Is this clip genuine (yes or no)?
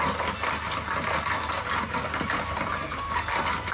yes